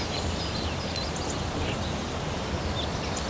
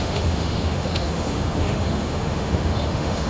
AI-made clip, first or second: second